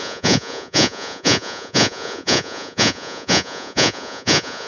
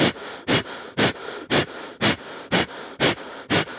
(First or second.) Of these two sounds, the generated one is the first